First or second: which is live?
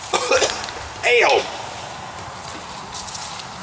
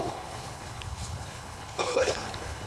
first